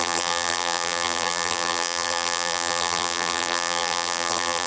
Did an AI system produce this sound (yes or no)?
yes